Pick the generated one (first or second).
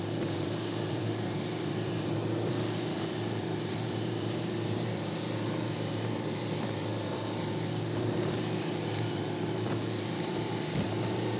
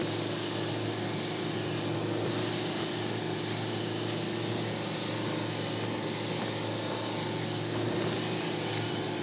first